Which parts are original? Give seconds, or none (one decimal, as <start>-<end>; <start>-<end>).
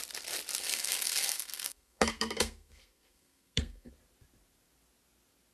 0.0-0.6; 3.9-5.5